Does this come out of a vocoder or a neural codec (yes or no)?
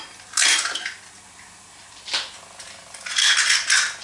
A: no